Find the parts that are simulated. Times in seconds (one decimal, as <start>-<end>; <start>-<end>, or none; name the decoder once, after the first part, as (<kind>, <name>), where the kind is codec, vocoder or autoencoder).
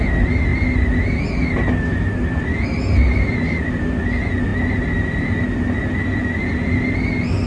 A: none